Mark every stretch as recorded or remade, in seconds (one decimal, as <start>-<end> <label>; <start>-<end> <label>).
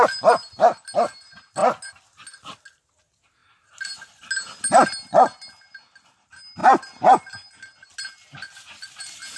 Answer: 0.0-9.4 recorded